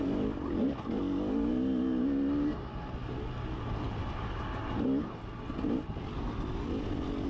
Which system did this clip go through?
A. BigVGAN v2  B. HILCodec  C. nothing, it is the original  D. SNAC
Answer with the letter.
C